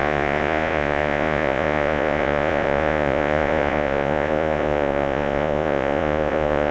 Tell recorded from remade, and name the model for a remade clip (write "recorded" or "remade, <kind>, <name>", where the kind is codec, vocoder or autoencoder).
remade, vocoder, Vocos